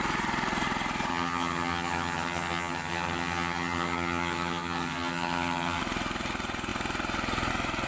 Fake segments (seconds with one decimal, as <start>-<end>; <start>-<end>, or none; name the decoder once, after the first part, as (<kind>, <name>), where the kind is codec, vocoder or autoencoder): 1.1-5.8 (vocoder, HiFi-GAN)